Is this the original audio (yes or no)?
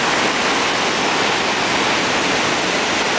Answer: yes